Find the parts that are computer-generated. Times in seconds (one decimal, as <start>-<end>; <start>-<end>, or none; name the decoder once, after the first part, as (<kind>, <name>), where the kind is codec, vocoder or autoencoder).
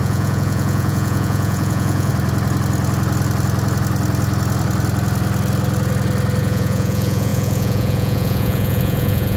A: 0.0-2.1 (vocoder, Vocos); 6.4-9.4